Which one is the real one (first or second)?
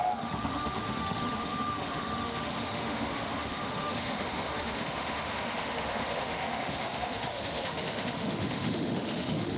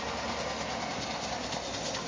second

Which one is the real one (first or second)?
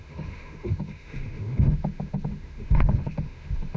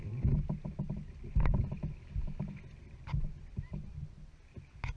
second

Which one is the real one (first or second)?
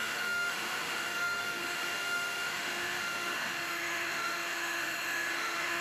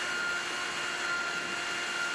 second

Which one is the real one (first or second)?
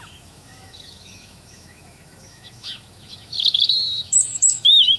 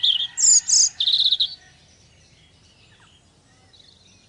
second